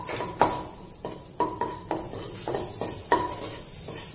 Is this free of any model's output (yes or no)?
yes